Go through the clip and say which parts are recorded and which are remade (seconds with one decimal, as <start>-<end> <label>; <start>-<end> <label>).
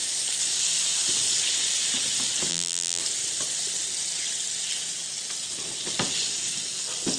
0.0-2.5 recorded; 2.5-3.0 remade; 3.0-7.2 recorded